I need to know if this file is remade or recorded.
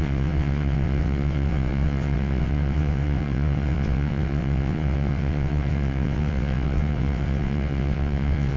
remade